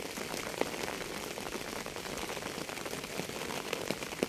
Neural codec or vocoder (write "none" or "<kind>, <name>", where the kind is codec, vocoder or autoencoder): none